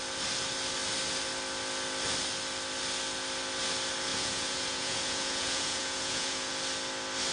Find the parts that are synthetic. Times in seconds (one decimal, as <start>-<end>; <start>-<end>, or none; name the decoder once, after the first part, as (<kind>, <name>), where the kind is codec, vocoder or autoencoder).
4.1-6.5 (vocoder, Vocos)